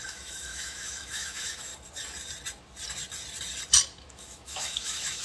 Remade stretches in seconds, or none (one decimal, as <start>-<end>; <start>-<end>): 0.0-1.7; 4.0-5.2